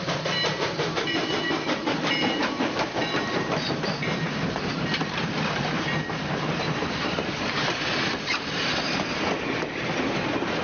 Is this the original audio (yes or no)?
no